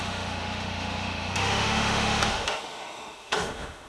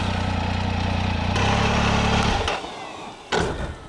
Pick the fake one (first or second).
first